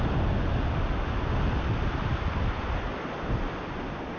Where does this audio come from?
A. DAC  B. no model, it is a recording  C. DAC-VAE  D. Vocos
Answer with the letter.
B